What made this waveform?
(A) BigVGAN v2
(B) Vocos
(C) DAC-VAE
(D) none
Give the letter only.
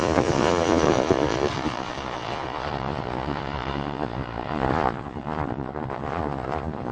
B